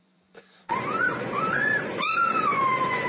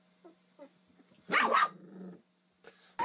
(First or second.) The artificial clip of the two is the first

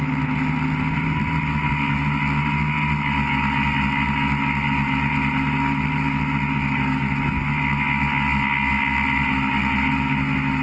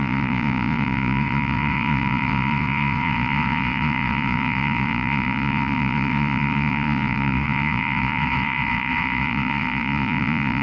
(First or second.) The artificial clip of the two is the second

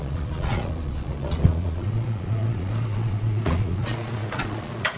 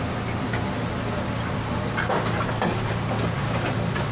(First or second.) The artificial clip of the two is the first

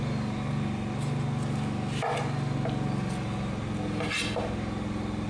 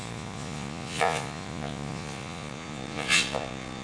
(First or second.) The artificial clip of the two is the second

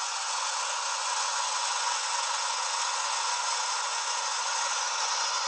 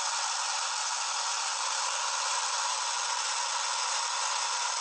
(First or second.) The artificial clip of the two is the first